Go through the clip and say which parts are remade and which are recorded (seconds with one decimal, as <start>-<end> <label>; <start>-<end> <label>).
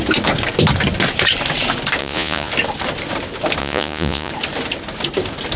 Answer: 0.0-2.0 recorded; 2.0-2.5 remade; 2.5-3.6 recorded; 3.6-4.3 remade; 4.3-5.6 recorded